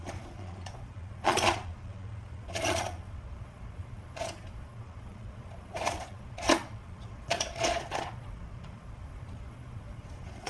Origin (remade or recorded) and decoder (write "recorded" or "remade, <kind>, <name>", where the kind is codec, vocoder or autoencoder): remade, vocoder, Vocos